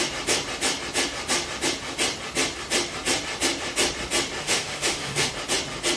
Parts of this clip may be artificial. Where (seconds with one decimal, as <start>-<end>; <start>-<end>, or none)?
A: 4.4-5.3